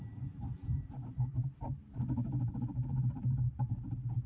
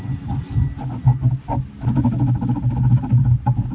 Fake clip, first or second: first